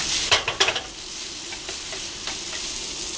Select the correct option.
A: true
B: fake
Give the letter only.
B